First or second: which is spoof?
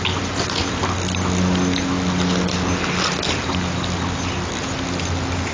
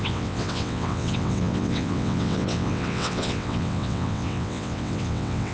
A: second